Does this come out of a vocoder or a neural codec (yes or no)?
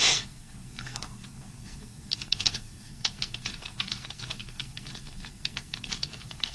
yes